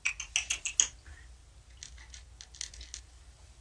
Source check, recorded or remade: recorded